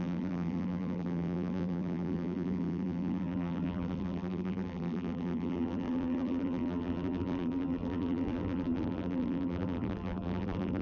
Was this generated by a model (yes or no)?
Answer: yes